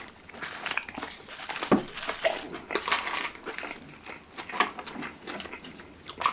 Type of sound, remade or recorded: recorded